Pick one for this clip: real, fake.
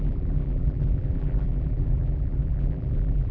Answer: fake